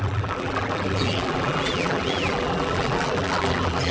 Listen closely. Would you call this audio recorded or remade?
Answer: remade